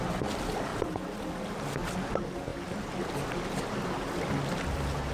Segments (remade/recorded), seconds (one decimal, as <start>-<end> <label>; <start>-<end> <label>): 0.0-5.1 recorded